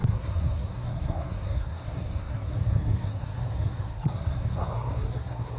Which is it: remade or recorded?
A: remade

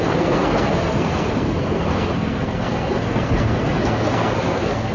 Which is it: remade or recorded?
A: remade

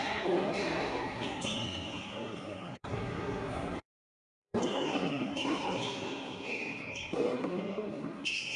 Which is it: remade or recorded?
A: remade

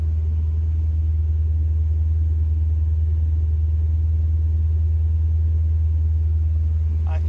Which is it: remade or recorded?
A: recorded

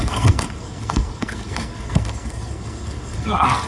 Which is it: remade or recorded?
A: remade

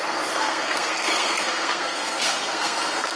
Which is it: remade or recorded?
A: remade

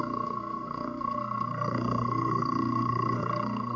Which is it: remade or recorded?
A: remade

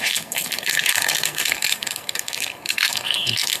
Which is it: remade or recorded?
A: remade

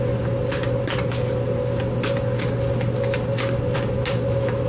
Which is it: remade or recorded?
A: recorded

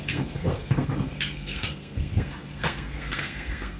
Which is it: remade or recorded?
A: remade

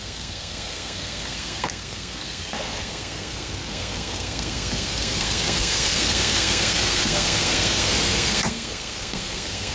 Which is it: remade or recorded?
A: remade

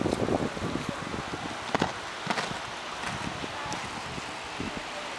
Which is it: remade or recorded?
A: recorded